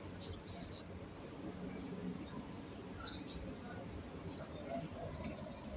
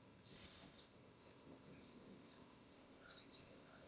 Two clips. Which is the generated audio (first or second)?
second